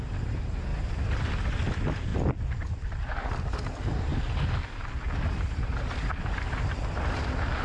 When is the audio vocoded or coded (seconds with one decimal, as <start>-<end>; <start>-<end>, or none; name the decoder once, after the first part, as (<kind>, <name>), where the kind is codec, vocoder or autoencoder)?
0.7-1.3 (vocoder, BigVGAN v2); 2.1-3.3